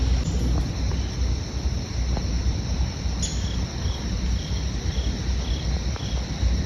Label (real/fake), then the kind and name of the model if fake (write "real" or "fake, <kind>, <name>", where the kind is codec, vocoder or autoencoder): real